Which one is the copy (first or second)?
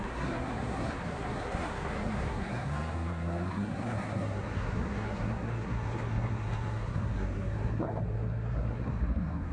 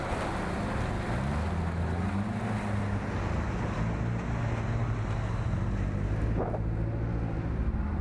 first